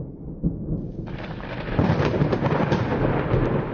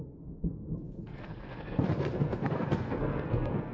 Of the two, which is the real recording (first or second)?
first